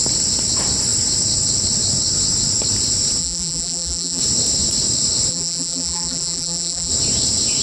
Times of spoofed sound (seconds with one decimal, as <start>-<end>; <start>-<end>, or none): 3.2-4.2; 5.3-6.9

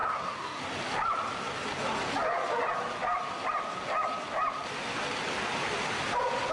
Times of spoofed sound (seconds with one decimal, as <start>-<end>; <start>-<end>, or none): 0.0-0.6

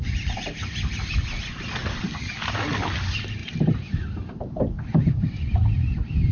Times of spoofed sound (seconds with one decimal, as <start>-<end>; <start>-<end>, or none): 3.4-6.3

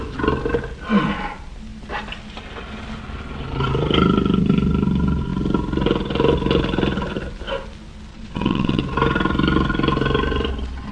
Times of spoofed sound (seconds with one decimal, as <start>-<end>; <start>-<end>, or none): 8.1-8.8

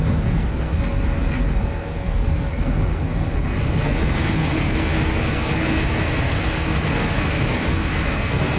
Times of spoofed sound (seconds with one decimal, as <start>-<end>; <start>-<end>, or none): 0.0-8.6

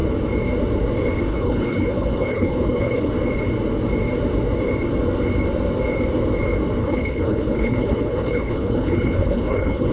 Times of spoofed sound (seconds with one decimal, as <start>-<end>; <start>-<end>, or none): 1.3-3.1; 6.8-9.9